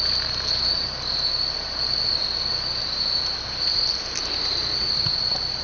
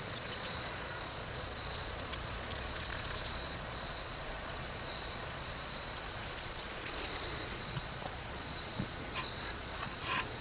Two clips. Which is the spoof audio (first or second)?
second